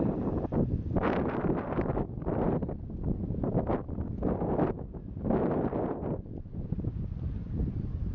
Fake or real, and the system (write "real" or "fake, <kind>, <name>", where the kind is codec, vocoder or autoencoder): real